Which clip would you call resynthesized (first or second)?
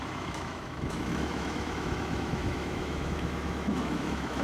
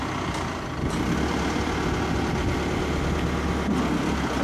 first